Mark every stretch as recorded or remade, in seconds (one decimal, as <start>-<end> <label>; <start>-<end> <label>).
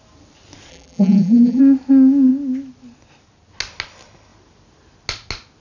0.0-0.7 recorded; 0.7-1.6 remade; 1.6-5.6 recorded